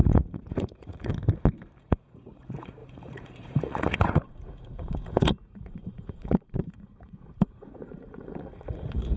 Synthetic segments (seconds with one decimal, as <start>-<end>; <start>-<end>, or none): 0.0-1.1; 1.8-9.2